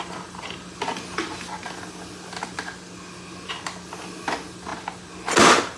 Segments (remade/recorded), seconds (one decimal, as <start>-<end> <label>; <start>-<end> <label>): 0.0-5.8 recorded